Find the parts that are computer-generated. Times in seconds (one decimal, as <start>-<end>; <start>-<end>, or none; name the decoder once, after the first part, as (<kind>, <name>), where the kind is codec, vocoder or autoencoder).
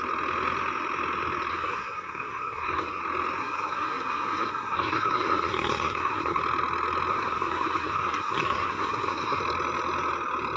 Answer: 1.5-3.0 (codec, SNAC); 3.4-6.4; 7.1-9.4